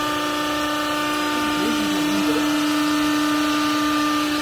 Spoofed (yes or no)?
no